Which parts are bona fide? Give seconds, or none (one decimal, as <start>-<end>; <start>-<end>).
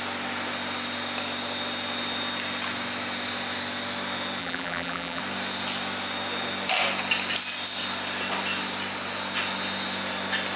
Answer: 0.0-4.4; 5.2-10.6